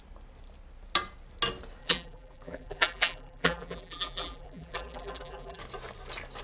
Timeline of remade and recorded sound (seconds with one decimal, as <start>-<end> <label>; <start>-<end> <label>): 0.0-1.8 recorded; 1.8-5.6 remade; 5.6-6.4 recorded